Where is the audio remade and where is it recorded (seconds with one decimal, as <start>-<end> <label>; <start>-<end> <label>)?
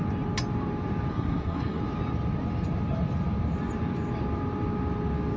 0.0-1.1 recorded; 1.1-1.8 remade; 1.8-5.4 recorded